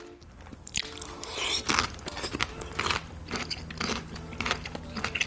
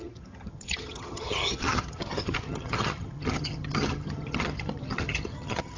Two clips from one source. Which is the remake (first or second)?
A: second